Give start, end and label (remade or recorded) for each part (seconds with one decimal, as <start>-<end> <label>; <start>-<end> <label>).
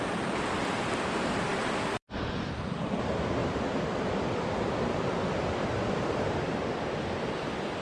0.0-3.4 remade; 3.4-4.0 recorded; 4.0-7.8 remade